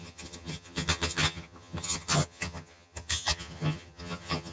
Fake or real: fake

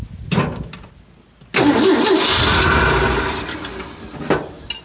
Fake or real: real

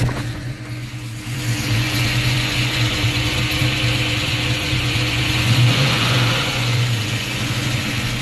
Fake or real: fake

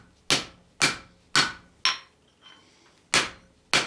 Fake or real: real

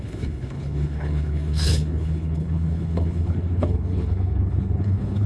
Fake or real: fake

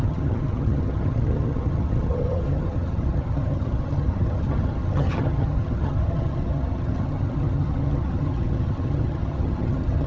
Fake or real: fake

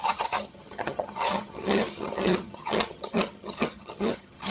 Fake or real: fake